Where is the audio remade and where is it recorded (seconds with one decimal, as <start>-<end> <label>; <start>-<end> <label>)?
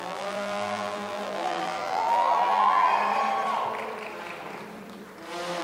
0.0-2.9 remade; 2.9-5.6 recorded